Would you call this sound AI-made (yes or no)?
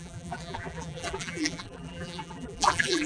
yes